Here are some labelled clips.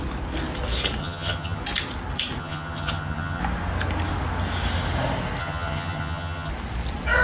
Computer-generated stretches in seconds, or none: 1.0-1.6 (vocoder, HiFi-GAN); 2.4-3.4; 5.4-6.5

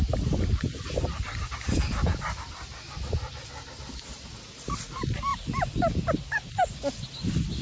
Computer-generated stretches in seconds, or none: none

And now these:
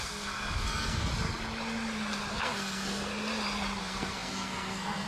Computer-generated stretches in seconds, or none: 0.0-1.1 (codec, SNAC); 2.3-3.1; 3.8-5.1

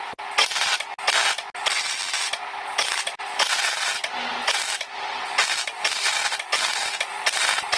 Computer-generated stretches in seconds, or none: none